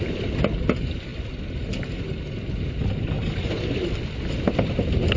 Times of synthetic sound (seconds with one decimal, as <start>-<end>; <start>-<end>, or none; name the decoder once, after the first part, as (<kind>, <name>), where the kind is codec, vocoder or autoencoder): none